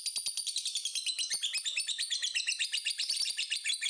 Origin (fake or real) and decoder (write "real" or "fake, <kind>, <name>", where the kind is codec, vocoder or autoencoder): real